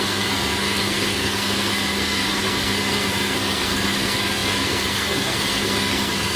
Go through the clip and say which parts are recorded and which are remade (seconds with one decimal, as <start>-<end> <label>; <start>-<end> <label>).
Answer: 0.0-6.4 remade